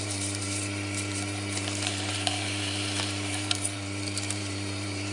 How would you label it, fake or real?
fake